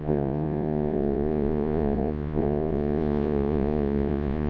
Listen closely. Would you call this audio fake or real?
fake